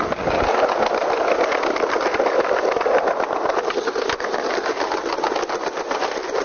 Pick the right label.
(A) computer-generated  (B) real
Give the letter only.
B